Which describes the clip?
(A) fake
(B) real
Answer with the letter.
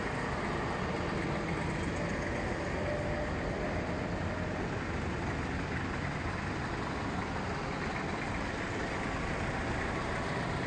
B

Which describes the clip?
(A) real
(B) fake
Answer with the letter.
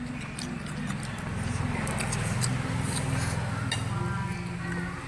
A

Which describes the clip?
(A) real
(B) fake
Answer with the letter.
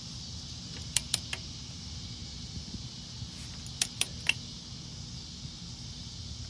A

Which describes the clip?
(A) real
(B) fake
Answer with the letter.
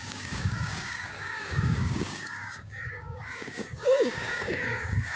B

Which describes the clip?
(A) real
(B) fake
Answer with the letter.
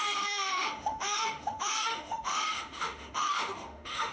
B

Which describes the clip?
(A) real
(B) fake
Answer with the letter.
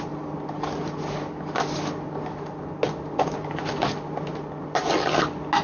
A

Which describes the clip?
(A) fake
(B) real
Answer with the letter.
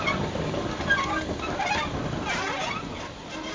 B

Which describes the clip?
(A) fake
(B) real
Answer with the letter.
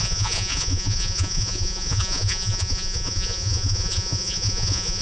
A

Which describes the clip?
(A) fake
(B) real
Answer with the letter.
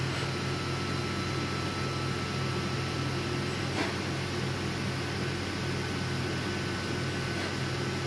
B